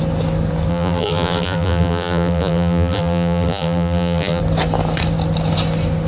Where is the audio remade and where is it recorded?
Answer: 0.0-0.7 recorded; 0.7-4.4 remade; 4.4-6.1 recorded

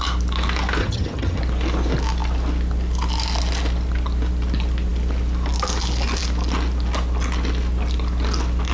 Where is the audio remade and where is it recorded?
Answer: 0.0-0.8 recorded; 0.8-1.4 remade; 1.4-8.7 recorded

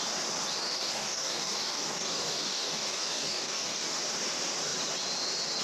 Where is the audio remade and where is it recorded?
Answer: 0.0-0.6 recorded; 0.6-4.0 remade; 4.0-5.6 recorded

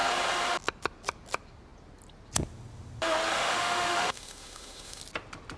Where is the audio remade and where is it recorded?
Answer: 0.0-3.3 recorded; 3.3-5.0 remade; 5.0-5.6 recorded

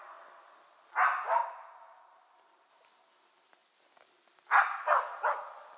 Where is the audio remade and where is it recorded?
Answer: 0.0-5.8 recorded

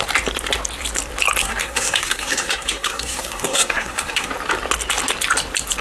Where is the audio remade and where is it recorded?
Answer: 0.0-1.4 recorded; 1.4-4.3 remade; 4.3-5.8 recorded

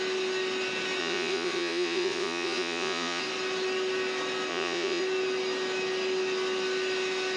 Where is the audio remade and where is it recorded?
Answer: 0.0-1.0 recorded; 1.0-3.2 remade; 3.2-4.5 recorded; 4.5-5.0 remade; 5.0-7.4 recorded

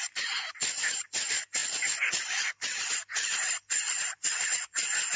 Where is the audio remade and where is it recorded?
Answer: 0.0-5.2 recorded